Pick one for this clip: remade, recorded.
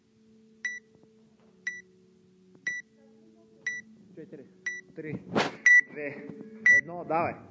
recorded